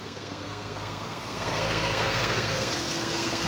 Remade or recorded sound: remade